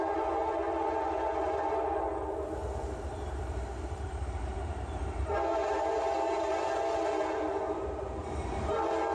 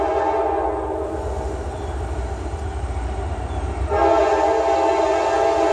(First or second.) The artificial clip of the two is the first